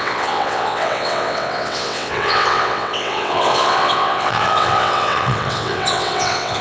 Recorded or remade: remade